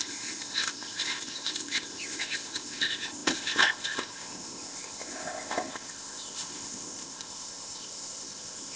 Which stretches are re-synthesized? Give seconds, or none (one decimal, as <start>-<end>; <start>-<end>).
0.0-8.8